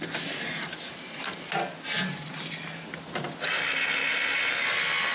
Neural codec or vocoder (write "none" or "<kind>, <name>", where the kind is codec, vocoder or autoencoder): none